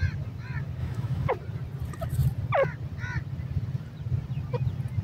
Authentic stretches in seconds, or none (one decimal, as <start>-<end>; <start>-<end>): 0.0-0.8; 1.3-5.0